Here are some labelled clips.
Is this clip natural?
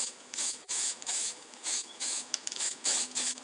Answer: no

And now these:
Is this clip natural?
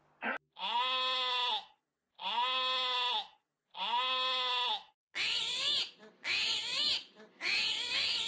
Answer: yes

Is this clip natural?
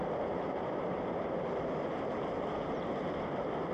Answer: yes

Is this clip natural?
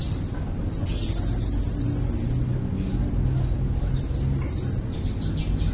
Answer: yes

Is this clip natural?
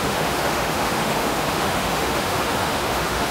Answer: no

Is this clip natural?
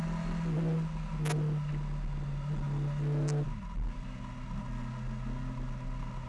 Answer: yes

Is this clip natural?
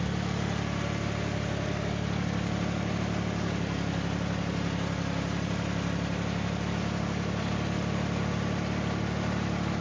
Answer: yes